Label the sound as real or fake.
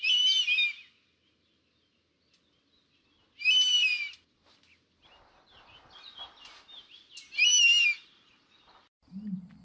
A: real